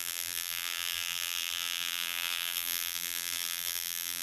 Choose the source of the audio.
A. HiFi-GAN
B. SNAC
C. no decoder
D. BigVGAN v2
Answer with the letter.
D